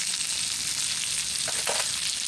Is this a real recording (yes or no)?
yes